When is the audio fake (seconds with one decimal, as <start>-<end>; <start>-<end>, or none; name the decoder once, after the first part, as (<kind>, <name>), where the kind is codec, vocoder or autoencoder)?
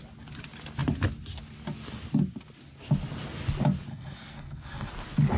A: 3.9-4.9 (codec, SNAC)